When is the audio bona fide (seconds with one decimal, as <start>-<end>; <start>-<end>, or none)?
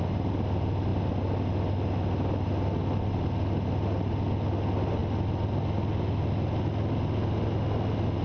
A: 0.0-8.2